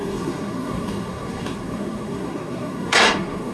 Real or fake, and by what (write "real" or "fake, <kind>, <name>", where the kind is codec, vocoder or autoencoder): fake, codec, SNAC